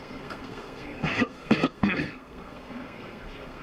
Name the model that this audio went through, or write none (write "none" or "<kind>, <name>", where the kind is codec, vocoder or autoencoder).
codec, SNAC